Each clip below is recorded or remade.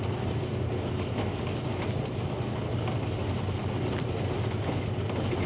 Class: recorded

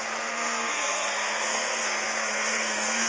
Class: remade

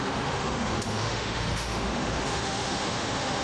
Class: remade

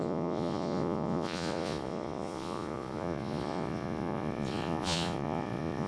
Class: remade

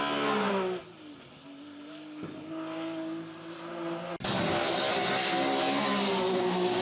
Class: recorded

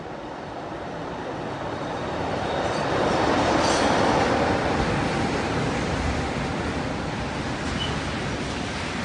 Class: recorded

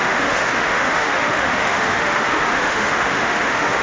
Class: remade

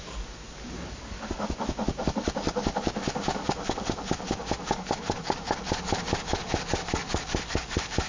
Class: remade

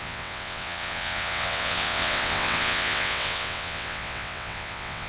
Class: remade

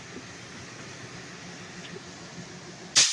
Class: recorded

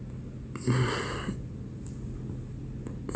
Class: recorded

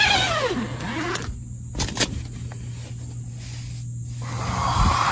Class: recorded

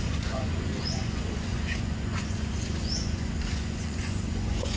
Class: remade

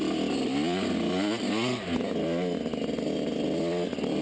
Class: recorded